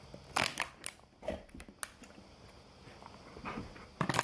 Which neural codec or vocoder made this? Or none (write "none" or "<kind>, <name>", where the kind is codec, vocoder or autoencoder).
none